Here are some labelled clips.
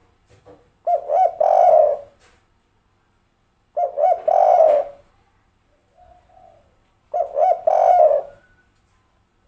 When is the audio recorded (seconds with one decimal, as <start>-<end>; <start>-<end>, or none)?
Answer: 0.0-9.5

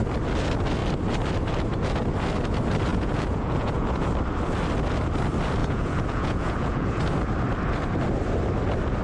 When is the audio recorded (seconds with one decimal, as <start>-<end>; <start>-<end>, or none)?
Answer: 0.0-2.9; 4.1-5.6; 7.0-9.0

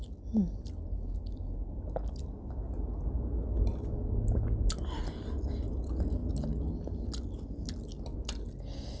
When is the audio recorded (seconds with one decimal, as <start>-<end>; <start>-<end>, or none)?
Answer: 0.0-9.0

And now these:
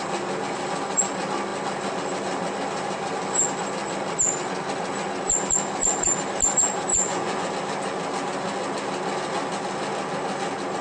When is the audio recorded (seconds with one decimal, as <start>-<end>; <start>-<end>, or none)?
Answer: 0.0-6.9; 7.5-10.8

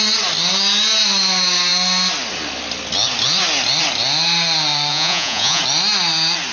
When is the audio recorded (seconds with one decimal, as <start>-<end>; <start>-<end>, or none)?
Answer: 0.0-4.9; 5.6-6.5

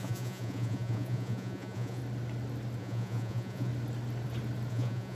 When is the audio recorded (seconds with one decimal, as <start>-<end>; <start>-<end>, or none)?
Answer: 2.0-2.8; 3.7-4.7